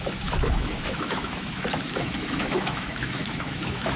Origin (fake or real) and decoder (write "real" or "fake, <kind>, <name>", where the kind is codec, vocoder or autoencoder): fake, autoencoder, DAC-VAE